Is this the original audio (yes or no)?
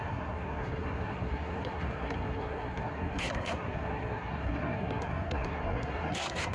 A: no